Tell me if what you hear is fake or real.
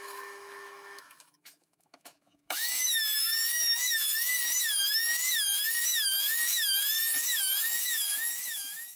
fake